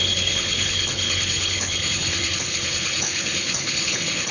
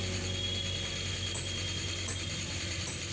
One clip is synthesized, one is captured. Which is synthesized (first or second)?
first